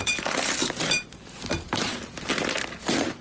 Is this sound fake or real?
real